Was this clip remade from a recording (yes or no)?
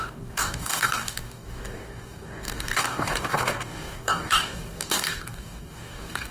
yes